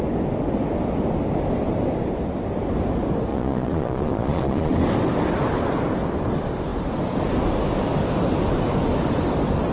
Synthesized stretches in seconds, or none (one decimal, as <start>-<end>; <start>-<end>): 3.3-4.7